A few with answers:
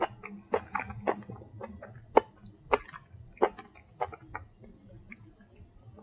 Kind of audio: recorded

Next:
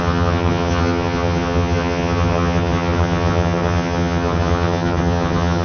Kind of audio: remade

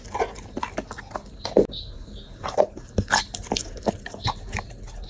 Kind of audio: recorded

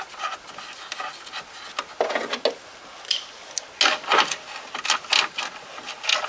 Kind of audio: recorded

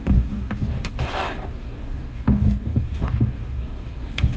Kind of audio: remade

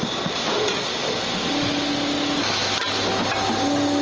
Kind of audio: recorded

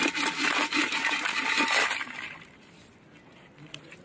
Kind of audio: recorded